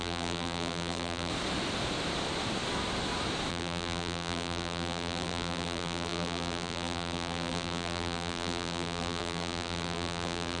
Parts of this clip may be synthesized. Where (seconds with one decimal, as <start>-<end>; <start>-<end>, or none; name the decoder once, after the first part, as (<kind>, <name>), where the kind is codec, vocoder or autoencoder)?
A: 0.0-1.3 (vocoder, BigVGAN v2); 3.5-10.6